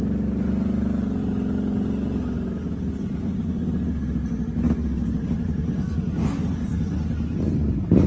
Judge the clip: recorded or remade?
recorded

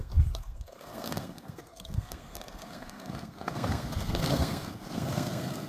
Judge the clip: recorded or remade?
remade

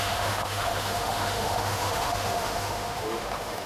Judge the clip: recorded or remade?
remade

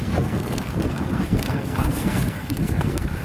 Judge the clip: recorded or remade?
remade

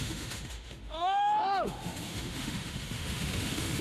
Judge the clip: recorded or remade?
remade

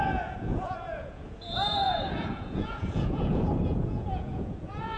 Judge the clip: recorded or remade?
remade